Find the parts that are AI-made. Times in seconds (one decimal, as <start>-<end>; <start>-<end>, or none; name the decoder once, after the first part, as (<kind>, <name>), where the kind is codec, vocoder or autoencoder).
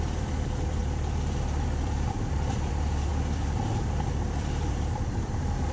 0.0-0.8 (vocoder, BigVGAN v2); 1.8-3.1; 3.7-5.7